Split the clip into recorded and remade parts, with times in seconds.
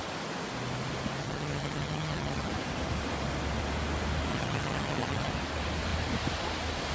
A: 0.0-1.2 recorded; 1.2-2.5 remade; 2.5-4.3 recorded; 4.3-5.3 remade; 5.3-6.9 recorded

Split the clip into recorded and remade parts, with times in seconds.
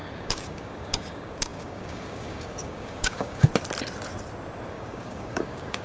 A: 0.0-3.5 remade; 3.5-4.7 recorded; 4.7-5.8 remade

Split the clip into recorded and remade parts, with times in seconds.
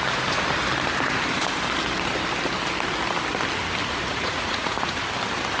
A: 0.0-3.8 recorded; 3.8-5.0 remade; 5.0-5.6 recorded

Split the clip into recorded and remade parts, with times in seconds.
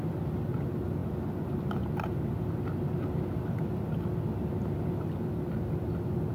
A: 0.0-6.3 recorded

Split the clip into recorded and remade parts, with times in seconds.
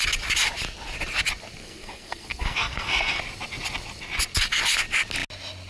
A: 0.0-1.6 recorded; 1.6-3.2 remade; 3.2-5.7 recorded